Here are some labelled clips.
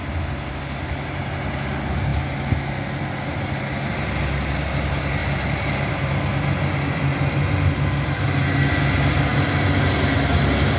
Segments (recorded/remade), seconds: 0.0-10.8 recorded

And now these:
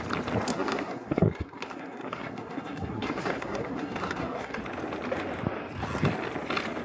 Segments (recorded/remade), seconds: 0.0-0.5 recorded; 0.5-4.6 remade; 4.6-6.8 recorded

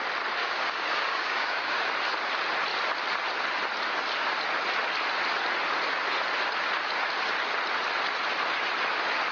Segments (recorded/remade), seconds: 0.0-0.4 recorded; 0.4-1.8 remade; 1.8-9.3 recorded